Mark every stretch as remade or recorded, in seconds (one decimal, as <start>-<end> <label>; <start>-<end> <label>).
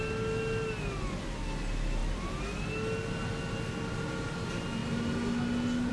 0.0-5.9 recorded